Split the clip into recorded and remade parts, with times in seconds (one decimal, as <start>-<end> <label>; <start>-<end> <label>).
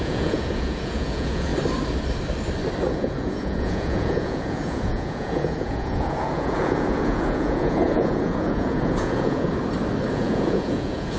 0.0-1.5 remade; 1.5-2.9 recorded; 2.9-9.5 remade; 9.5-10.1 recorded; 10.1-11.2 remade